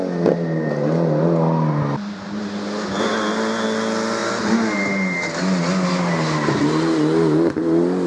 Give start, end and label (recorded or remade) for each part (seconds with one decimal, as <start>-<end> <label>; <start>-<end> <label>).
0.0-8.1 recorded